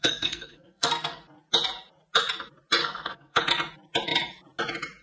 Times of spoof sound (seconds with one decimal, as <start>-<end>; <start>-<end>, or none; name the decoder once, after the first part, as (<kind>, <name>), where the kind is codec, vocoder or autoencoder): 0.0-1.2 (codec, SNAC); 2.8-3.4

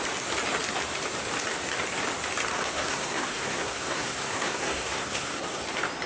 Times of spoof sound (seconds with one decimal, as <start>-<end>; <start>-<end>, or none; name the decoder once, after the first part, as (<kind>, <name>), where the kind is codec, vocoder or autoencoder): 2.5-5.6 (codec, SNAC)

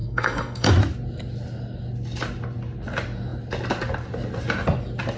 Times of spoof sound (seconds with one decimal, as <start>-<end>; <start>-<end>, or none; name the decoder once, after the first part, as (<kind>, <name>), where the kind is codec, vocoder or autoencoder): 0.0-0.7 (codec, SNAC)

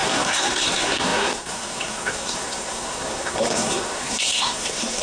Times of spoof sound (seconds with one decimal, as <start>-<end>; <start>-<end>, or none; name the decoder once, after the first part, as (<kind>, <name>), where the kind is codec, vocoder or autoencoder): 0.0-5.0 (codec, SNAC)

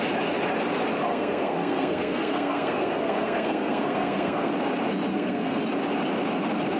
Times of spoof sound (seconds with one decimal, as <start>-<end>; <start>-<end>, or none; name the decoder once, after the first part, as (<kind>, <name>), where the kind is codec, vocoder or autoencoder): 1.1-4.5 (codec, SNAC); 5.1-5.6

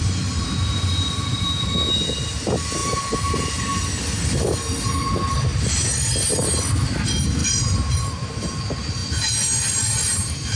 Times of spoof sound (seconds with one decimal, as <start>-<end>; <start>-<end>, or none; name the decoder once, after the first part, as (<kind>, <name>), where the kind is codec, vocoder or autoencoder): none

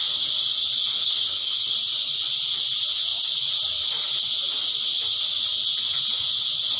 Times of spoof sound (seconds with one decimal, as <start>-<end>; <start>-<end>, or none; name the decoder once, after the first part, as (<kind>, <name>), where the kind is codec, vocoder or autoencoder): 1.0-1.7 (codec, SNAC)

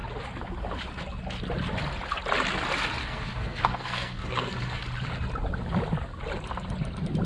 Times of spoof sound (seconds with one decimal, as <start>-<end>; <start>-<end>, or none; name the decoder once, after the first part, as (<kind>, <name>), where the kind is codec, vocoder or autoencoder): 3.0-4.8 (codec, SNAC)